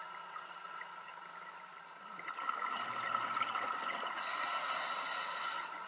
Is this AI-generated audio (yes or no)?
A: no